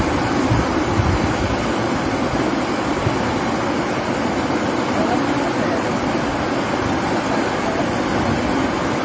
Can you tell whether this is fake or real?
real